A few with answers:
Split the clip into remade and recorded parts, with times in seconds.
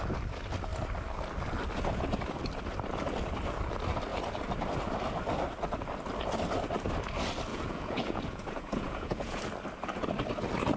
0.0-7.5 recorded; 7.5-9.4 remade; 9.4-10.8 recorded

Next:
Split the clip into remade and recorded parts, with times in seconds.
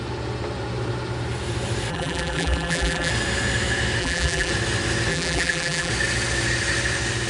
0.0-1.9 recorded; 1.9-3.1 remade; 3.1-4.0 recorded; 4.0-4.5 remade; 4.5-5.1 recorded; 5.1-5.9 remade; 5.9-7.3 recorded